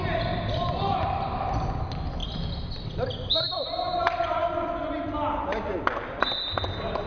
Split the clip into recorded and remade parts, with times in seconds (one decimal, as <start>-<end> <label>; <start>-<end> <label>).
0.0-7.1 recorded